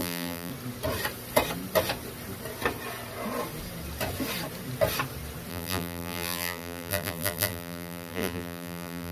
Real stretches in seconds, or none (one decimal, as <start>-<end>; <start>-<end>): 0.5-5.5